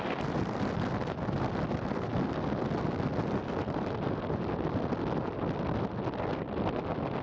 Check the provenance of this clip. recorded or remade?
recorded